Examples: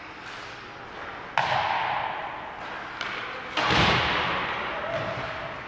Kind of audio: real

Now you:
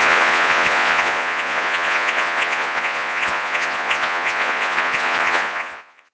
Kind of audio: fake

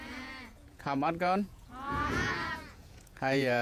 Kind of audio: fake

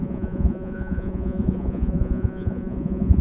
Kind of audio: fake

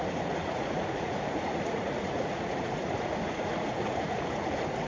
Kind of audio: fake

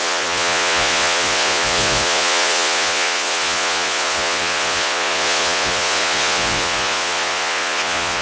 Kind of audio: fake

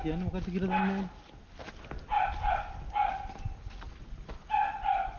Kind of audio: real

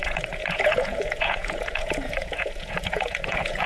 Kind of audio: fake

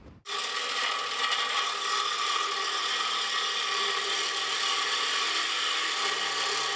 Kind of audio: real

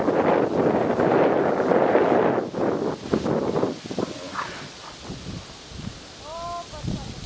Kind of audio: real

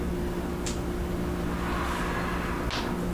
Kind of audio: real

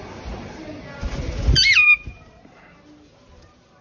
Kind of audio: real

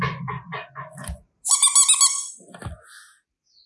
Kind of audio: real